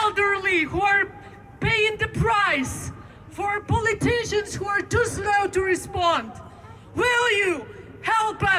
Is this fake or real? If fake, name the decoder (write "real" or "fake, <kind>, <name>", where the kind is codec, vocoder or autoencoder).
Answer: fake, vocoder, BigVGAN v2